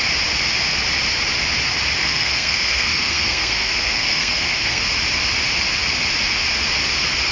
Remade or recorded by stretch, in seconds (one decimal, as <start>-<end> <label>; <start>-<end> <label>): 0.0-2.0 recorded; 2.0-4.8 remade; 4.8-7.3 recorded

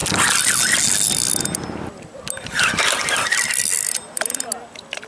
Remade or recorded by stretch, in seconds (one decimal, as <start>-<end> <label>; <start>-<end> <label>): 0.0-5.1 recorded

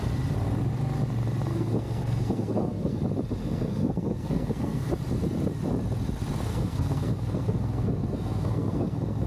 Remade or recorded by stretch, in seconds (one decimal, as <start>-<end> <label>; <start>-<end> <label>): 0.0-1.5 recorded; 1.5-3.0 remade; 3.0-3.4 recorded; 3.4-4.9 remade; 4.9-6.5 recorded; 6.5-9.3 remade

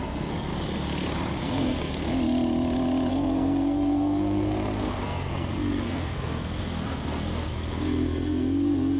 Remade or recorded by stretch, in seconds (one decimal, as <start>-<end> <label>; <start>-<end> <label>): 0.0-0.5 remade; 0.5-1.4 recorded; 1.4-2.0 remade; 2.0-3.1 recorded; 3.1-9.0 remade

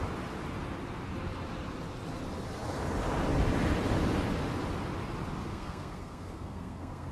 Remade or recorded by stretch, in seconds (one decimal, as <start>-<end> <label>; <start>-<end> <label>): 0.0-5.5 recorded; 5.5-7.1 remade

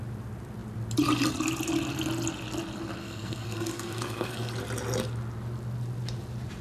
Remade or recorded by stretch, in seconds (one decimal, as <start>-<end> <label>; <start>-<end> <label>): 0.0-3.0 recorded; 3.0-4.5 remade; 4.5-6.6 recorded

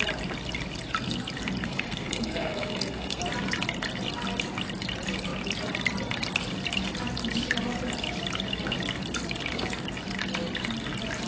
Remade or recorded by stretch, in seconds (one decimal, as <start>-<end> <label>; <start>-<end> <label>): 0.0-1.6 recorded; 1.6-3.2 remade; 3.2-11.3 recorded

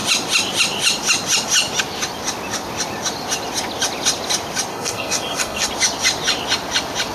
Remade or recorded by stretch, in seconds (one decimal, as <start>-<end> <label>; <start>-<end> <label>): 0.0-4.7 recorded; 4.7-5.7 remade; 5.7-7.1 recorded